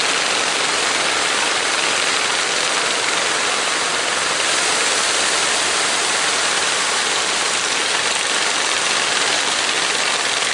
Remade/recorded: recorded